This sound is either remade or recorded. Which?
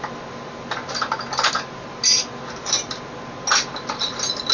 recorded